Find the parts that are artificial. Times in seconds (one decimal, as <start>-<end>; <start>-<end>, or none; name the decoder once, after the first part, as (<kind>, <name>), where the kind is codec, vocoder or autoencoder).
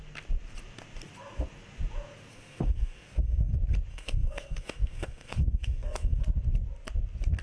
2.3-3.5 (codec, SNAC); 3.9-6.2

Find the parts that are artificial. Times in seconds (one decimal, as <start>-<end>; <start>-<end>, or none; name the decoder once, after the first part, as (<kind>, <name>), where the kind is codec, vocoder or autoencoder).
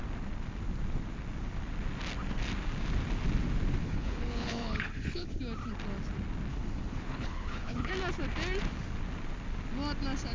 3.8-5.4 (codec, HILCodec); 6.5-7.9